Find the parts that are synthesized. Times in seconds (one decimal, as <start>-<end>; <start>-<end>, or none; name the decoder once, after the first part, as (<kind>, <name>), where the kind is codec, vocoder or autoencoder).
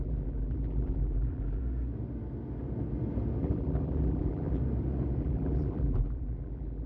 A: 0.0-1.6 (vocoder, BigVGAN v2); 3.4-4.6; 5.2-6.9